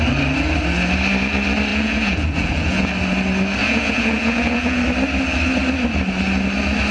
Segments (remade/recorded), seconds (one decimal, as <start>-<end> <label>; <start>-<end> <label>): 0.0-1.7 recorded; 1.7-2.9 remade; 2.9-3.6 recorded; 3.6-4.8 remade; 4.8-6.9 recorded